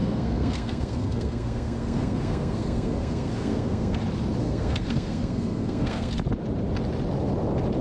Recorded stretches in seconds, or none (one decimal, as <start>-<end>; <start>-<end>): 4.0-4.4; 6.1-7.8